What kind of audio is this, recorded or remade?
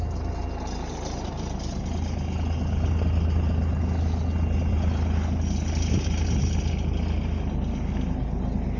recorded